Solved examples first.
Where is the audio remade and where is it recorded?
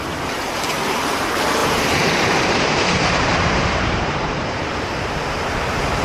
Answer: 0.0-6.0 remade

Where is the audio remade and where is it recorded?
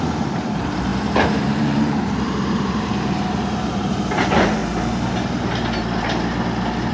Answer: 0.0-4.6 remade; 4.6-6.9 recorded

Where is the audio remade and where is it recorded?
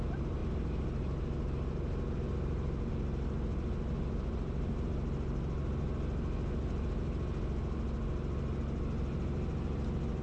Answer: 0.0-10.2 recorded